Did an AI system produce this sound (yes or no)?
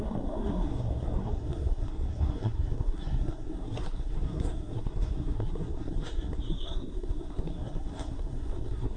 yes